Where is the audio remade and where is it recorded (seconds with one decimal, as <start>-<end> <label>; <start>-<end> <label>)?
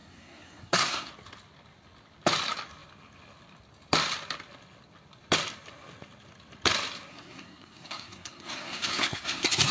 0.0-1.1 remade; 1.1-7.1 recorded; 7.1-9.7 remade